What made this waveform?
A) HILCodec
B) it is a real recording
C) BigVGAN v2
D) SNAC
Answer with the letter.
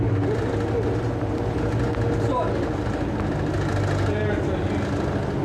B